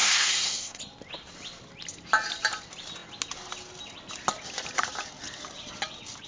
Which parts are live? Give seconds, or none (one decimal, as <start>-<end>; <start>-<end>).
0.8-6.3